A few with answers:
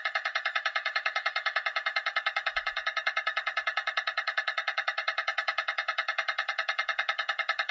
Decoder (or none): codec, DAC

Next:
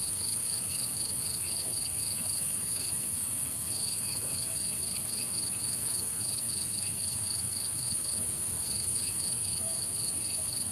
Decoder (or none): codec, SNAC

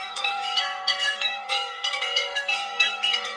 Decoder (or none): codec, SNAC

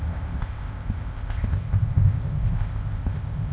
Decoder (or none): codec, ZipCodec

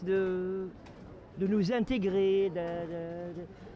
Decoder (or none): none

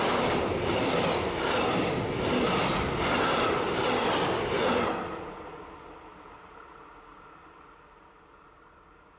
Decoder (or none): none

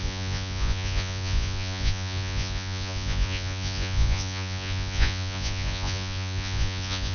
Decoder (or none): vocoder, Vocos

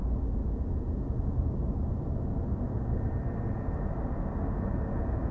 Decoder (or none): none